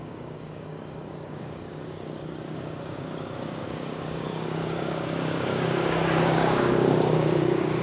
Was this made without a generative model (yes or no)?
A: no